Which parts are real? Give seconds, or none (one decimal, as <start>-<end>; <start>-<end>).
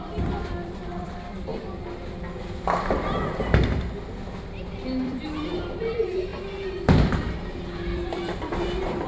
1.5-4.6; 6.3-7.6